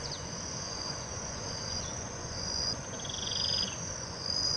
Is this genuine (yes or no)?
no